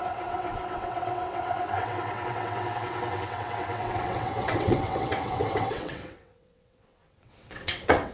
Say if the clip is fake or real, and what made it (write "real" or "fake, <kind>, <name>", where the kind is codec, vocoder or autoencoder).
fake, vocoder, WaveNeXt